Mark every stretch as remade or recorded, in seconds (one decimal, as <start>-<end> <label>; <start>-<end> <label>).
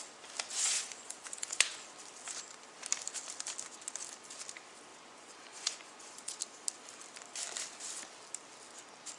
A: 0.0-0.5 recorded; 0.5-1.8 remade; 1.8-4.9 recorded; 4.9-6.4 remade; 6.4-9.2 recorded